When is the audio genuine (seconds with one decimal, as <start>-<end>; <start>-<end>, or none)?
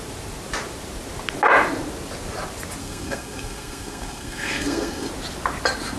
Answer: 0.0-2.8; 5.1-6.0